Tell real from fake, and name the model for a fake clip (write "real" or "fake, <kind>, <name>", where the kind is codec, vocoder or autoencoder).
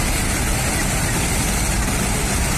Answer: fake, vocoder, BigVGAN v2